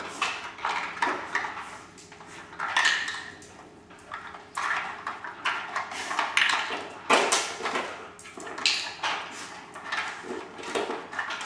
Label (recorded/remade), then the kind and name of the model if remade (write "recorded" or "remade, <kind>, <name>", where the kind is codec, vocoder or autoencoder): recorded